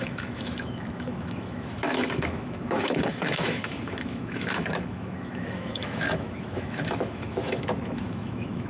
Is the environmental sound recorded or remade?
remade